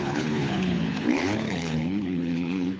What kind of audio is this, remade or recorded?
remade